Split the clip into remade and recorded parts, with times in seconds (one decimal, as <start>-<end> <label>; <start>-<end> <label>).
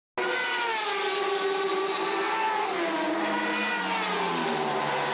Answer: 0.0-5.1 recorded